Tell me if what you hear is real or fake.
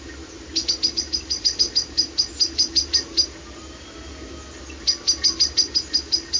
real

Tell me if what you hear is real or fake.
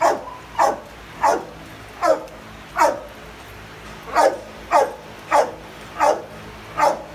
real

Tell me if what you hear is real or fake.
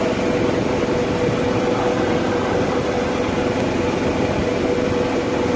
real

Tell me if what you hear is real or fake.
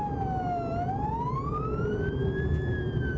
real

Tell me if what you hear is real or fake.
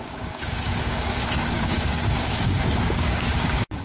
fake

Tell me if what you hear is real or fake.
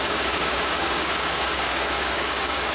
fake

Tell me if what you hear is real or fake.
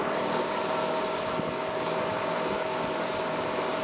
fake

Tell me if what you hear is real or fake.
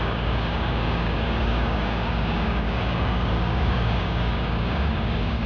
fake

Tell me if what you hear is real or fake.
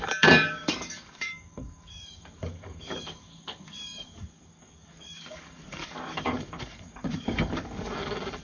fake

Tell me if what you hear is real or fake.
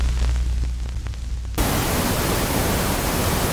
real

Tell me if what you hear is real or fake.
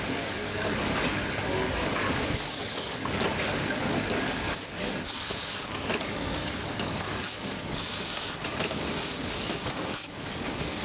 fake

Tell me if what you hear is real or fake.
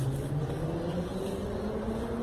real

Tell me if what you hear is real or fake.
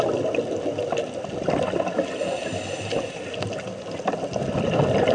real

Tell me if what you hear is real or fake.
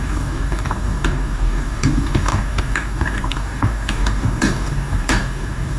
fake